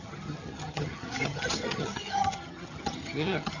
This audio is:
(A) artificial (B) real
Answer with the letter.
A